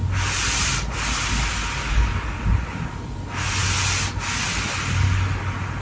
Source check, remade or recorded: recorded